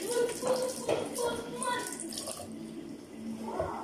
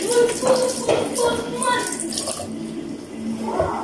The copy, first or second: first